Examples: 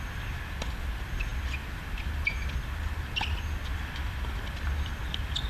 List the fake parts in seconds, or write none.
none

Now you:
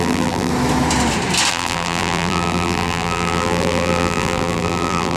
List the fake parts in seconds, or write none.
0.0-0.5 (vocoder, BigVGAN v2); 1.5-5.2

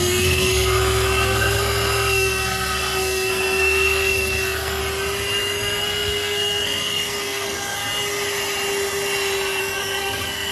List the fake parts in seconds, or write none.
0.0-4.8 (codec, SNAC); 5.4-7.8; 9.6-10.5

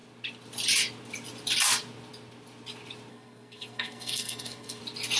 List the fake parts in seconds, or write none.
3.1-4.8 (codec, SNAC)

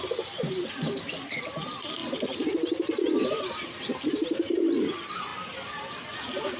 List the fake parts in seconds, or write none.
0.0-2.0 (vocoder, BigVGAN v2); 3.2-5.3

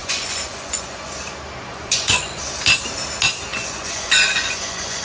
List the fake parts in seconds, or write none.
0.0-1.1 (vocoder, Vocos); 1.7-2.4; 3.5-5.0

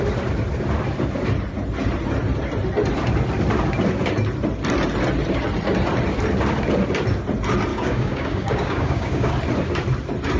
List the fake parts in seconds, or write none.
7.7-9.3 (codec, DAC)